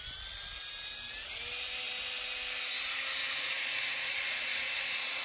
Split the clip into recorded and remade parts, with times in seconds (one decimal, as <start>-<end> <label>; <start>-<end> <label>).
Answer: 0.0-3.2 recorded; 3.2-5.2 remade